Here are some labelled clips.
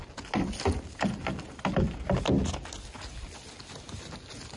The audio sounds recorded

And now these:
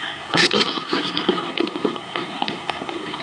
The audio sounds remade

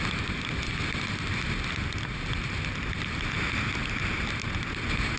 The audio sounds recorded